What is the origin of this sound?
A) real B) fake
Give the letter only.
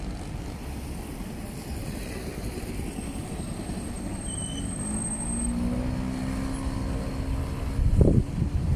A